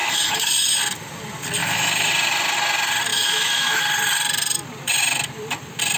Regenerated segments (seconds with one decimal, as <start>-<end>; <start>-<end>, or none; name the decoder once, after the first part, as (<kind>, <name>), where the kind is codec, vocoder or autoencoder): 0.0-0.8 (autoencoder, DAC-VAE); 1.6-2.1; 3.1-3.8